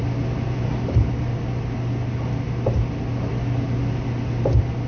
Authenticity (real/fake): real